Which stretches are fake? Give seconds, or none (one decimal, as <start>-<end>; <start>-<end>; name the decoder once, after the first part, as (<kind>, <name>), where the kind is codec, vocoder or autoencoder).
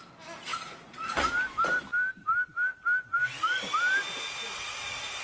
0.5-1.3 (vocoder, Vocos)